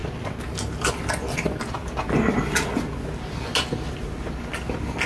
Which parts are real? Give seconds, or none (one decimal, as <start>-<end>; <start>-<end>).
0.0-5.1